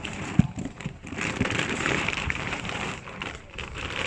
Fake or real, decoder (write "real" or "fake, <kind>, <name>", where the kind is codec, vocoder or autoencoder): fake, vocoder, BigVGAN v2